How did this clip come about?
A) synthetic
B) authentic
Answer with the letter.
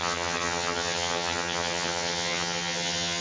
A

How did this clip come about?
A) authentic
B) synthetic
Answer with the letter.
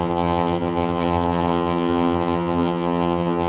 B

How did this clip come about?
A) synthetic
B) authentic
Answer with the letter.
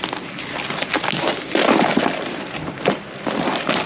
B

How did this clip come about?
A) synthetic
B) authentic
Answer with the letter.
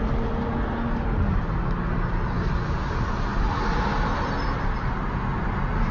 B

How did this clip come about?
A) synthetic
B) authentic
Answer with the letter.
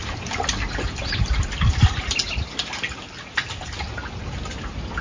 B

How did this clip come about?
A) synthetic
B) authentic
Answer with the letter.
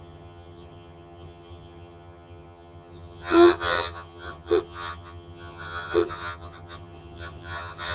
A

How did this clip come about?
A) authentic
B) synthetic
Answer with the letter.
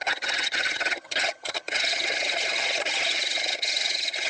B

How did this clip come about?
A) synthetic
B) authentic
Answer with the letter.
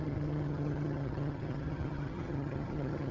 A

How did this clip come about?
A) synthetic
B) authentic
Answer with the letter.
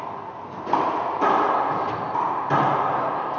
B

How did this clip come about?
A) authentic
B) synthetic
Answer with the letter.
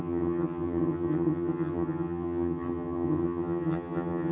B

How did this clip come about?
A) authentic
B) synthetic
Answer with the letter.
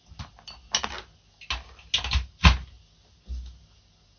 A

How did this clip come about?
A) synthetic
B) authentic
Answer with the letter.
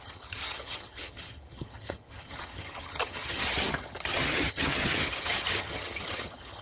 A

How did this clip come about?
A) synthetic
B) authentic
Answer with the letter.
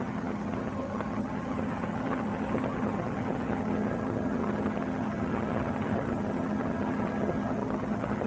A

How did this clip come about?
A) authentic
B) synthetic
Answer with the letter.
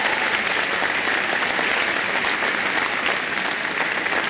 A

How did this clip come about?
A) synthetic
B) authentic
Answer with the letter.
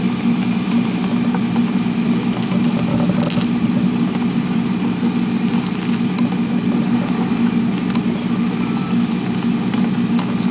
B